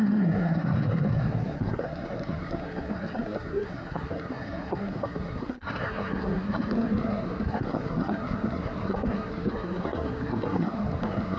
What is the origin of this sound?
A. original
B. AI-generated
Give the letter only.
B